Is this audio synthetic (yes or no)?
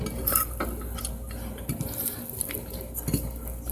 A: no